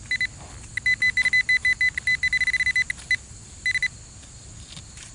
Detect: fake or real real